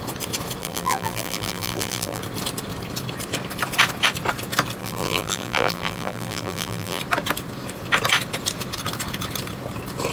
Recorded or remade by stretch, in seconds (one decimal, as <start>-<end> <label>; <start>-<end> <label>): 0.0-0.6 recorded; 0.6-2.2 remade; 2.2-4.8 recorded; 4.8-7.0 remade; 7.0-10.1 recorded